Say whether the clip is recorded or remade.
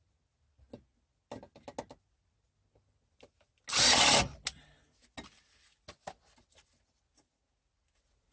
recorded